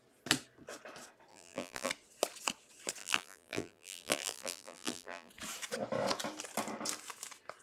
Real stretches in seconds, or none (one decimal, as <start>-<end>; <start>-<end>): 0.0-1.3; 1.9-3.0; 5.3-7.6